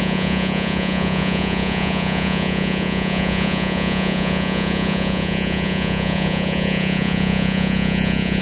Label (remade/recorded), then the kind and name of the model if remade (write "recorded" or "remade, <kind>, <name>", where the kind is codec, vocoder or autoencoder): remade, vocoder, Vocos